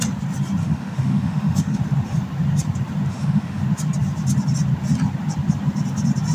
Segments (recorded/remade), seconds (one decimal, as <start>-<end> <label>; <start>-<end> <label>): 0.0-0.6 recorded; 0.6-1.8 remade; 1.8-3.1 recorded; 3.1-3.6 remade; 3.6-6.3 recorded